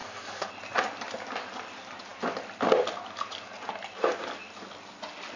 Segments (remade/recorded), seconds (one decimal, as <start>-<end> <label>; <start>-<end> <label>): 0.0-0.5 remade; 0.5-5.4 recorded